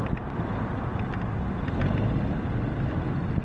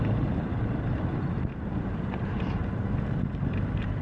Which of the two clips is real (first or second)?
first